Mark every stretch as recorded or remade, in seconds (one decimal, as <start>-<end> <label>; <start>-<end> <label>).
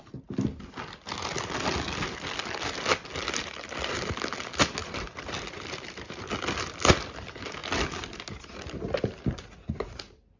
0.0-4.8 recorded; 4.8-6.2 remade; 6.2-10.4 recorded